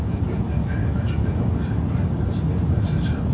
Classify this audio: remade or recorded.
recorded